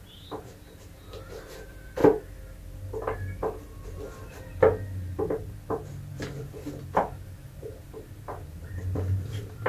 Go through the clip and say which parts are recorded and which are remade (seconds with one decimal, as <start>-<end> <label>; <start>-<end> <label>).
0.0-2.0 remade; 2.0-5.7 recorded; 5.7-9.7 remade